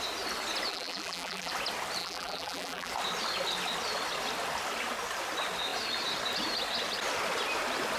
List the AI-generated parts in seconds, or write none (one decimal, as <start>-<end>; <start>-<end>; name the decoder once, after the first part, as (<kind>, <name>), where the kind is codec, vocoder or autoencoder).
0.7-1.5 (vocoder, BigVGAN v2); 2.0-2.9